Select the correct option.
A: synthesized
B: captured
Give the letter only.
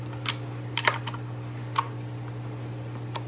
B